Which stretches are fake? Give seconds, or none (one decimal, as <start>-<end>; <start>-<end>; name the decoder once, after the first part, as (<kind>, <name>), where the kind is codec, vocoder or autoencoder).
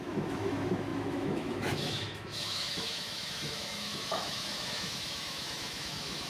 0.0-6.3 (autoencoder, DAC-VAE)